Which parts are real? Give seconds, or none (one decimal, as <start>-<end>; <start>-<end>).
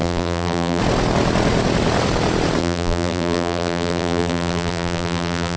0.8-2.6